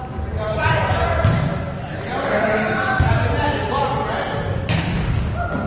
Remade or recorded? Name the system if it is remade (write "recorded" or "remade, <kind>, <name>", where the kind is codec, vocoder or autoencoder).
recorded